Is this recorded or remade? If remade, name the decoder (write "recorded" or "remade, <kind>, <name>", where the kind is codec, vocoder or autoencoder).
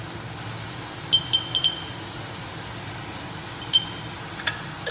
recorded